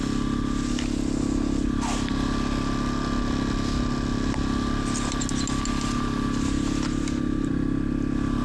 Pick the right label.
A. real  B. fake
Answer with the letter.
A